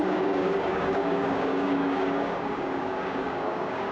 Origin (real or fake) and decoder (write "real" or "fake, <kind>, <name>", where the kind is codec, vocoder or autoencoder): fake, codec, DAC